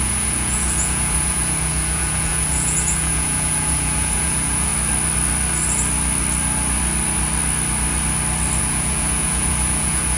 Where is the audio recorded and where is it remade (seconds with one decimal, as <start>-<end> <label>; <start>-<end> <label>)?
0.0-4.7 remade; 4.7-8.6 recorded; 8.6-10.2 remade